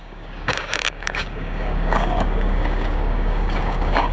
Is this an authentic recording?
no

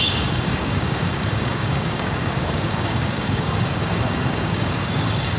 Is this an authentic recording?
no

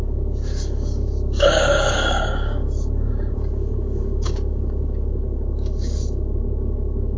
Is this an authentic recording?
no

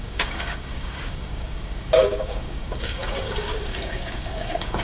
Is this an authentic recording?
no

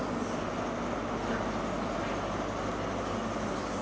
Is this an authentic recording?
yes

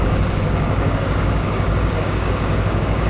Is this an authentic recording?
no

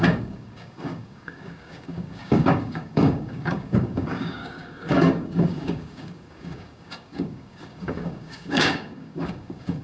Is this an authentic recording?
no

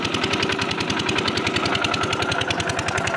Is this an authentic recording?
yes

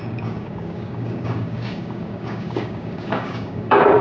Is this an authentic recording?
no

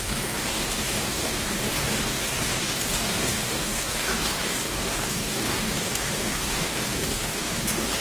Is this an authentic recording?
no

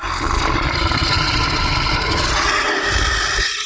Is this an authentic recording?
yes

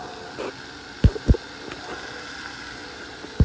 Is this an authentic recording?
yes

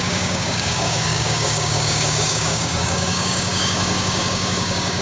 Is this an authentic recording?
no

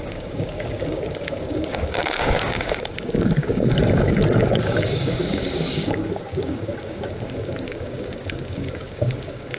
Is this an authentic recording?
no